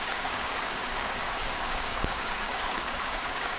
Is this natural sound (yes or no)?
no